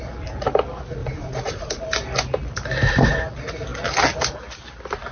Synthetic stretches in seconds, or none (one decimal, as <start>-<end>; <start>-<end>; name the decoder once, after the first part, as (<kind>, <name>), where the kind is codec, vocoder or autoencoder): 1.0-1.7 (vocoder, Vocos)